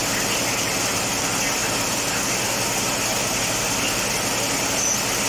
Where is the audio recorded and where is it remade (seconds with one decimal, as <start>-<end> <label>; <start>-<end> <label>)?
0.0-5.3 recorded